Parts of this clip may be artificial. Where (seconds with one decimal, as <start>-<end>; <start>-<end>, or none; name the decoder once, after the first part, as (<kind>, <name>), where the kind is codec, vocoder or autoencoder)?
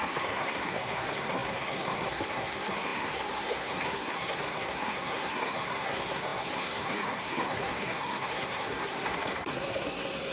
0.0-10.3 (codec, SNAC)